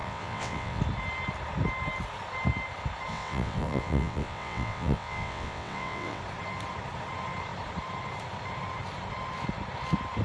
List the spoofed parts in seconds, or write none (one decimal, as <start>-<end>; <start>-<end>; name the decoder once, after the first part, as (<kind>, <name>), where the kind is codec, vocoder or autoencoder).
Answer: 0.0-0.8 (vocoder, WaveNeXt); 3.1-6.2